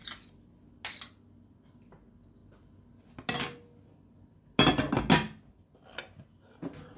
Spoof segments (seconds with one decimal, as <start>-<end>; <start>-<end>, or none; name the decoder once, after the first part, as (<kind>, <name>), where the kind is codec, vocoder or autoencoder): none